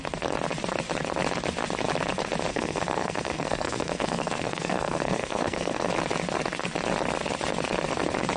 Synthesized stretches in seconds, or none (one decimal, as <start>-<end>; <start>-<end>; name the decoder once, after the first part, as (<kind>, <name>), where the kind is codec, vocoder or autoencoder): 2.5-5.9 (codec, SNAC)